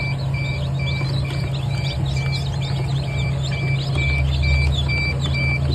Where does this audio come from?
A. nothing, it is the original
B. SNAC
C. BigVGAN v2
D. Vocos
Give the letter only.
A